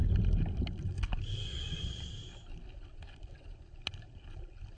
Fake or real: real